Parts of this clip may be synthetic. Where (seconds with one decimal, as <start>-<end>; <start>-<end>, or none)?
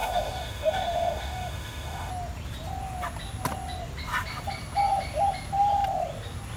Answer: 0.0-2.1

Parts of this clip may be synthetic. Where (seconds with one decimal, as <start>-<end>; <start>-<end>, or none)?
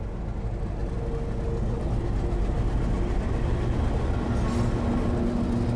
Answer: none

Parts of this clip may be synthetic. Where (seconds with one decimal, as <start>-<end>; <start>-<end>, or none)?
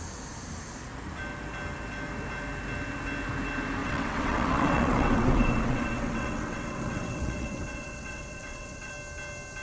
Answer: 3.8-8.9